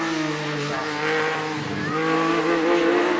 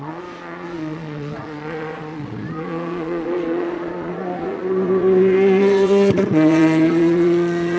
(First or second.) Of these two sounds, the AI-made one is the second